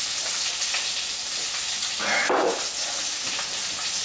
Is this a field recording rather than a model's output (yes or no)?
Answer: yes